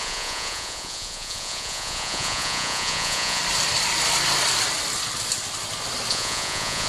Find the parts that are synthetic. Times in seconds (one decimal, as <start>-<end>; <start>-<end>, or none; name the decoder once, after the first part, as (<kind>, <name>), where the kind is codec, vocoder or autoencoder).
0.0-3.4 (vocoder, Vocos); 6.1-6.9